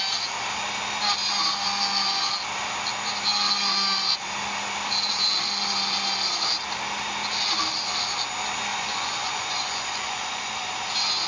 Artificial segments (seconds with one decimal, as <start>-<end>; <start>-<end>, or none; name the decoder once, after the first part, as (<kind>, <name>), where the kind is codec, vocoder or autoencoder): 8.7-10.7 (vocoder, Vocos)